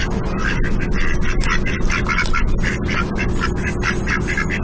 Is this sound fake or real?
real